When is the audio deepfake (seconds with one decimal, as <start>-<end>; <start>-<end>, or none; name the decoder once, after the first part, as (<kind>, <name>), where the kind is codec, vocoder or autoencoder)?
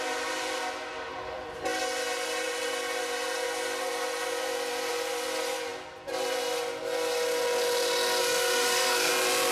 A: 8.2-9.1 (codec, SNAC)